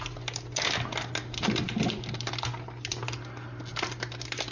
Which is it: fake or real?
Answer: real